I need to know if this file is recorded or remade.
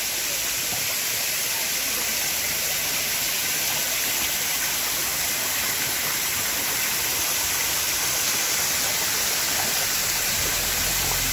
recorded